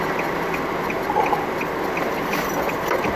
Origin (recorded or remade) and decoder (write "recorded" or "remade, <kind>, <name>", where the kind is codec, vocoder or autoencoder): recorded